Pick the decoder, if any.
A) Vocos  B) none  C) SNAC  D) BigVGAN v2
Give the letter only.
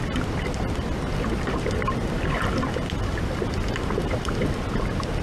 B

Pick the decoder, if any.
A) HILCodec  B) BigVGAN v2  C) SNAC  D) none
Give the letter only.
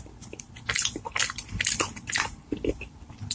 D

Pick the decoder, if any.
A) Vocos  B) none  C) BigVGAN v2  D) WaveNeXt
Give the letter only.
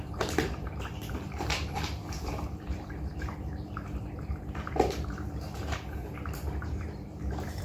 C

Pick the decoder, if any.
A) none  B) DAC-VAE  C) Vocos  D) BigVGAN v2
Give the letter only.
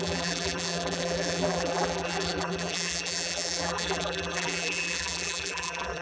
D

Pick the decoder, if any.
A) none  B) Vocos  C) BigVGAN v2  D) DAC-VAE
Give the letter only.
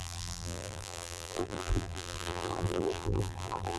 C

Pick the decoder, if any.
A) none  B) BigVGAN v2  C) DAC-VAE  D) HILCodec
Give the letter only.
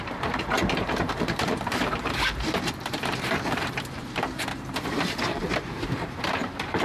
B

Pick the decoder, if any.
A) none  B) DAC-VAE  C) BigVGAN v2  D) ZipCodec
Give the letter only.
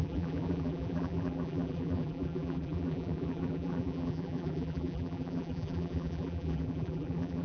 C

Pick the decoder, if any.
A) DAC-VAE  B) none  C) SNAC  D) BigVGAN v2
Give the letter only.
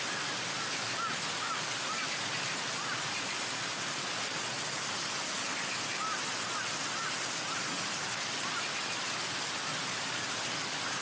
B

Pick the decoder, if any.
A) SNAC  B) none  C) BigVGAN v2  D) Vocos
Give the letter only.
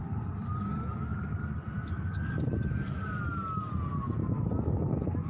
B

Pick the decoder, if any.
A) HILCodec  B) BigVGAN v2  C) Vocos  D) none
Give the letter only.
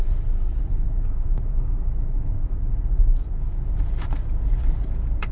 B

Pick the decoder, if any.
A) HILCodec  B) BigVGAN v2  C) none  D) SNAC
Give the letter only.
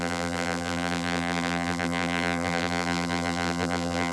B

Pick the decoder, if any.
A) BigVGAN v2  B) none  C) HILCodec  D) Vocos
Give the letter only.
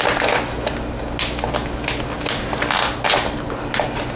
B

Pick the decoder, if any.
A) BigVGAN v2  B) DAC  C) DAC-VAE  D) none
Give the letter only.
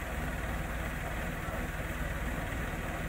D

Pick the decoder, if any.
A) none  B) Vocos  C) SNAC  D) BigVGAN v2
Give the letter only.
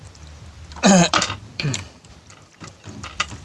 D